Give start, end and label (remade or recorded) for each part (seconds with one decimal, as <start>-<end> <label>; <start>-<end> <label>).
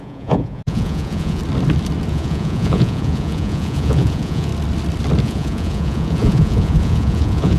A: 0.0-1.4 remade; 1.4-2.1 recorded; 2.1-4.5 remade; 4.5-5.2 recorded; 5.2-7.6 remade